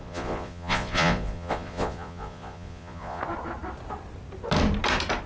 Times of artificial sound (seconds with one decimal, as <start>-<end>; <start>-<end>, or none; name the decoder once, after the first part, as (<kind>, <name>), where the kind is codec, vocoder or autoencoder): 0.0-3.2 (vocoder, Vocos)